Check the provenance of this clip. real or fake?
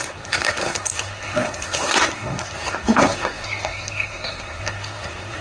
fake